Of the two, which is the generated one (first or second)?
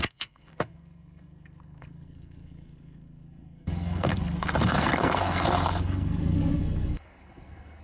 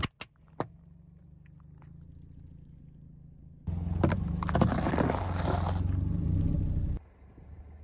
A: first